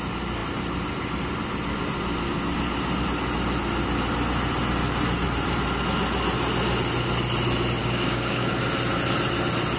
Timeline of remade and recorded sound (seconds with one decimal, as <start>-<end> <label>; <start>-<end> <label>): 0.0-7.8 recorded; 7.8-8.6 remade; 8.6-9.8 recorded